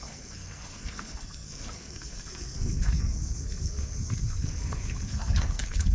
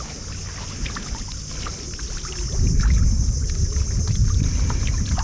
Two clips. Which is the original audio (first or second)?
second